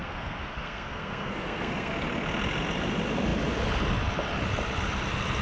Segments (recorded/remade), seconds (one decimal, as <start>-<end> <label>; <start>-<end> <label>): 0.0-1.9 remade; 1.9-5.4 recorded